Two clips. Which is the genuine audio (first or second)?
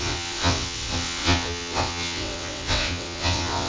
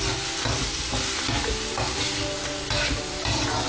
second